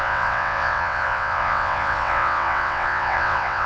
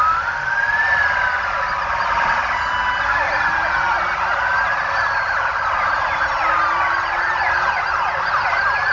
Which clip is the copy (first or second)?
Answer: first